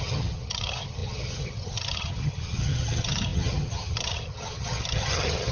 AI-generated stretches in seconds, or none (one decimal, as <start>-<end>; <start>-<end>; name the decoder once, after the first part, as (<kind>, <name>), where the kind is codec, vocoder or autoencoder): 0.0-5.5 (vocoder, HiFi-GAN)